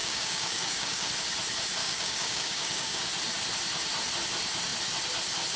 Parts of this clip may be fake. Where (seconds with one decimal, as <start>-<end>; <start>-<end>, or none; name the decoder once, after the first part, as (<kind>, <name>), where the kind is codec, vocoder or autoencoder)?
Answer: 0.0-1.1 (codec, DAC); 1.8-3.1